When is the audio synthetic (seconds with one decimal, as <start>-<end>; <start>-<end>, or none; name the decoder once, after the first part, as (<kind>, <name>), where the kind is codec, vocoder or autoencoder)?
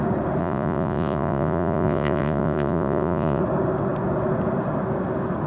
0.4-3.4 (vocoder, Vocos)